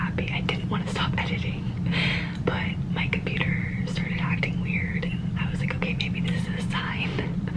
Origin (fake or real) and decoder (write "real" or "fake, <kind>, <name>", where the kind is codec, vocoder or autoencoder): real